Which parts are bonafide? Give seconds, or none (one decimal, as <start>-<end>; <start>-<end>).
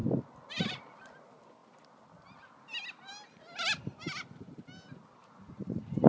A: 0.0-5.2